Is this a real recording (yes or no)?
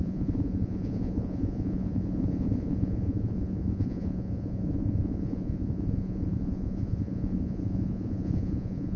no